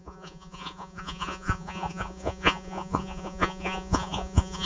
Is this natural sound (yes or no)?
no